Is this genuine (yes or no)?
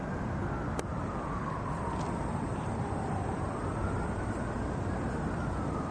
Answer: yes